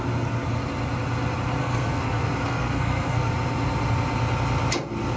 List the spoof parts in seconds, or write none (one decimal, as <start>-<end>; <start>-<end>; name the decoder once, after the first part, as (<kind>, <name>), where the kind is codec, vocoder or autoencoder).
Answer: 1.6-3.3 (codec, SNAC)